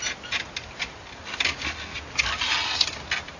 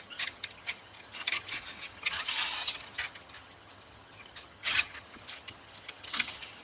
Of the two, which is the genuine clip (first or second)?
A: first